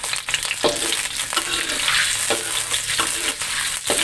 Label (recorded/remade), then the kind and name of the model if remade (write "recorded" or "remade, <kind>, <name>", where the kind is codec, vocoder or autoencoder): recorded